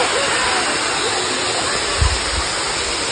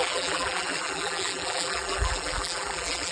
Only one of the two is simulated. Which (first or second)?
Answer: second